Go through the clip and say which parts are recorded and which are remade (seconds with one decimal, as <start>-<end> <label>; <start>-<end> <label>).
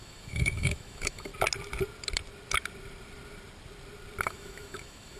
0.0-1.3 remade; 1.3-4.2 recorded; 4.2-5.2 remade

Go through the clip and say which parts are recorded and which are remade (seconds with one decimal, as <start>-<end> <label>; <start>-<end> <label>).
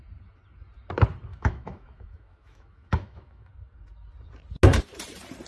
0.0-1.3 recorded; 1.3-3.5 remade; 3.5-5.5 recorded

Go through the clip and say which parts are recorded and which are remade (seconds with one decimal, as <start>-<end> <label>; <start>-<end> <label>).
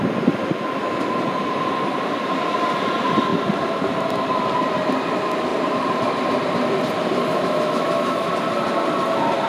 0.0-7.3 recorded; 7.3-8.3 remade; 8.3-9.5 recorded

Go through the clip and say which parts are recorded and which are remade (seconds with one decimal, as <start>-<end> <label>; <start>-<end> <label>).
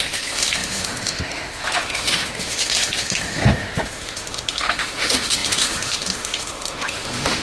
0.0-7.4 remade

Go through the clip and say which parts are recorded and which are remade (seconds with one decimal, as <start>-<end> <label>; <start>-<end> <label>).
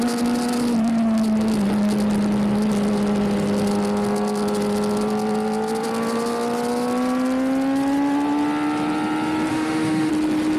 0.0-9.5 recorded; 9.5-10.1 remade; 10.1-10.6 recorded